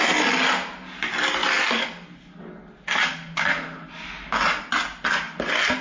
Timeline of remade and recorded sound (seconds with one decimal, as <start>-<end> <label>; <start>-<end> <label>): 0.0-5.8 recorded